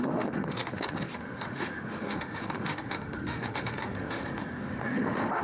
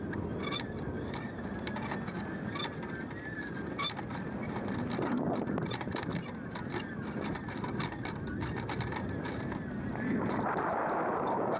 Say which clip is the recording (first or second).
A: second